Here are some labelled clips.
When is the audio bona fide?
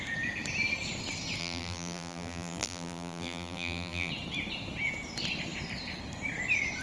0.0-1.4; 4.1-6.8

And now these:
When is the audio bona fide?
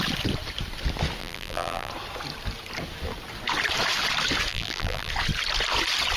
0.0-1.2; 1.9-4.5; 5.1-6.2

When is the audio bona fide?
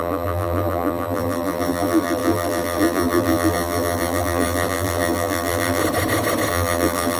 5.8-6.5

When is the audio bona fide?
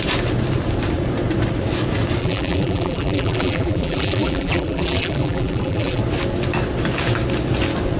0.0-2.2; 6.0-8.0